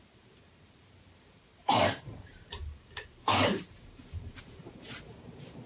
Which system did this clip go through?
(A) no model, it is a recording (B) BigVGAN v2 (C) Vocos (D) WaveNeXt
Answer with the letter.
B